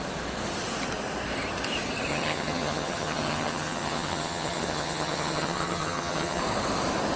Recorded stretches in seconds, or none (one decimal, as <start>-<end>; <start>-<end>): 0.0-2.1; 6.4-7.2